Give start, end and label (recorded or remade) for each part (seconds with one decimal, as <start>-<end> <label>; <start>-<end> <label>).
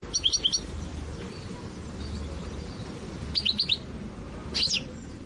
0.0-5.3 recorded